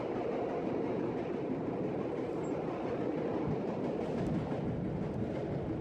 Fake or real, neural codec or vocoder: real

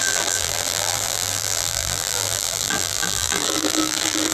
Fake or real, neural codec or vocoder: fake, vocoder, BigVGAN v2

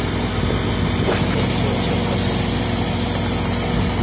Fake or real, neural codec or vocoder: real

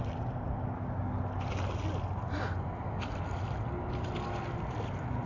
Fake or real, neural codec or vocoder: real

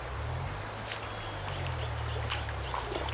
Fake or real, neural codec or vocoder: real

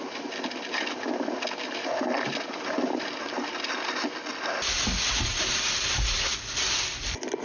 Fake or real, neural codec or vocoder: real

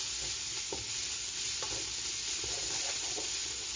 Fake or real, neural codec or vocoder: real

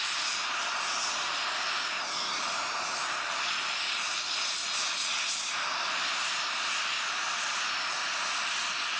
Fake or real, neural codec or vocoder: real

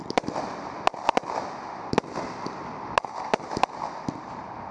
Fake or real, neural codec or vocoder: real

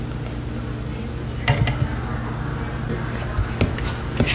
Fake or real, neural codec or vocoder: real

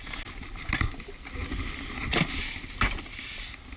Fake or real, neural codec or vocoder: real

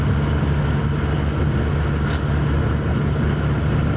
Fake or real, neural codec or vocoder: real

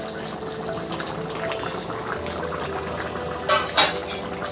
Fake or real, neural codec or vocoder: real